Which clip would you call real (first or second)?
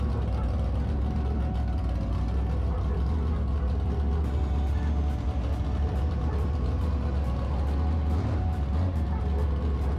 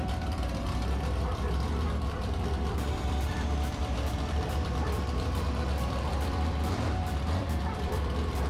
first